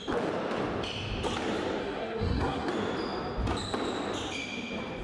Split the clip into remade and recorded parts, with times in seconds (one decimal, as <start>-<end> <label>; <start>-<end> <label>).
0.0-1.8 recorded; 1.8-2.7 remade; 2.7-5.0 recorded